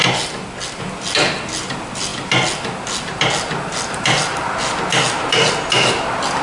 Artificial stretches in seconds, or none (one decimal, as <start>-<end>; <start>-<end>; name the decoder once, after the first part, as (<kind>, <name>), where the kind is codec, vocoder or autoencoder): none